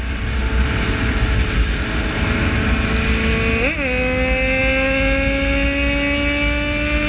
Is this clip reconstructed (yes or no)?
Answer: no